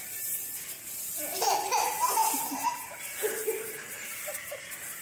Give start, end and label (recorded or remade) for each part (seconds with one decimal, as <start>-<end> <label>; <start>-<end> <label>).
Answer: 0.0-2.2 recorded; 2.2-5.0 remade